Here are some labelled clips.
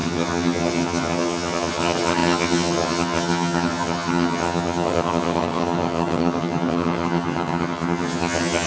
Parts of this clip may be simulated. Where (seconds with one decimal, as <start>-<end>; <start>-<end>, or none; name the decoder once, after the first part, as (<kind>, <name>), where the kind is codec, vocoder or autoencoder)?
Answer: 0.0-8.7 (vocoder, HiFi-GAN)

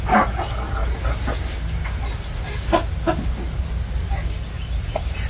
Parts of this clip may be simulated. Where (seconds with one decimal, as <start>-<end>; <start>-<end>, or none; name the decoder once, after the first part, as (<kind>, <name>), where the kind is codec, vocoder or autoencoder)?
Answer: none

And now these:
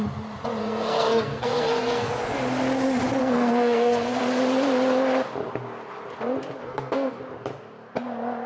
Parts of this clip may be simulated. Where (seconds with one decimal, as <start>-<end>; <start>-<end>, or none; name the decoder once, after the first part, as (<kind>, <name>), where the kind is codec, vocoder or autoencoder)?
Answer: 0.6-2.1 (codec, SNAC); 3.2-4.2; 6.6-7.2

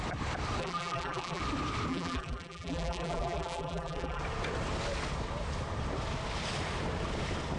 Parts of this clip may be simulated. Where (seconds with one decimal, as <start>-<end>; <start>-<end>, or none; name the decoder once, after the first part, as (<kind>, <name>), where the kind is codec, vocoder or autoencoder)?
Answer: 0.6-1.4 (vocoder, BigVGAN v2); 1.9-4.2